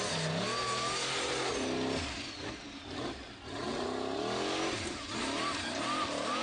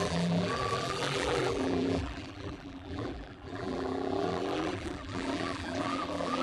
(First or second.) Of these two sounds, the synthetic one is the second